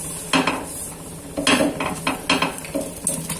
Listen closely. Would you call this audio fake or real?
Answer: real